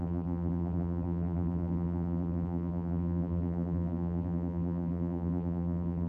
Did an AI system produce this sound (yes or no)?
yes